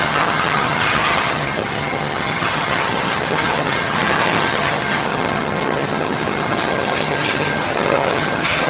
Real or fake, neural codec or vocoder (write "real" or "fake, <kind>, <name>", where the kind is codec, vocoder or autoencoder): fake, vocoder, HiFi-GAN